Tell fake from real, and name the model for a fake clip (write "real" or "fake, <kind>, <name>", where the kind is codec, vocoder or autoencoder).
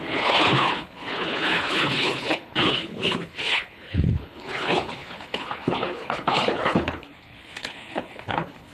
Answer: fake, codec, HILCodec